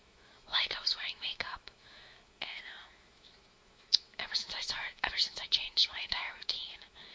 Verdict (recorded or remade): remade